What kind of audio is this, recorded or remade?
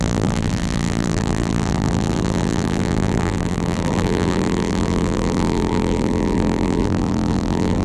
remade